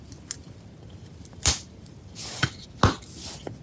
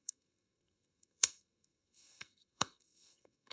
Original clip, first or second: first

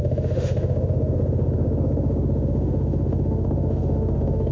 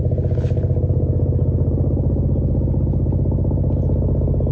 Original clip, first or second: second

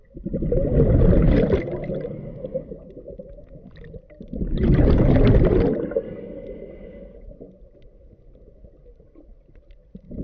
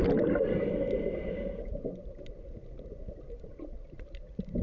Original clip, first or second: first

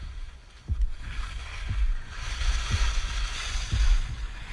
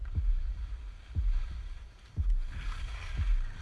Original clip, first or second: second